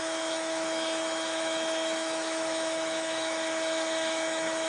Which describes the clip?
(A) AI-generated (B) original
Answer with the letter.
A